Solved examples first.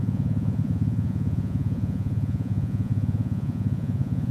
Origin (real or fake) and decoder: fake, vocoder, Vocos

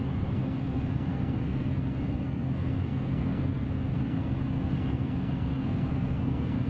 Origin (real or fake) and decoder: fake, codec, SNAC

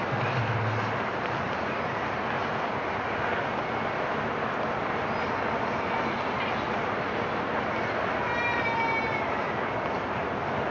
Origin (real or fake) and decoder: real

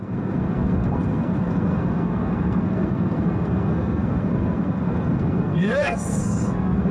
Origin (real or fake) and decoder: fake, codec, SNAC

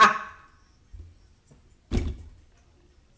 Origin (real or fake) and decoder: real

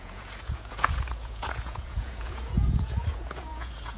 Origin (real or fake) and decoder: fake, vocoder, Vocos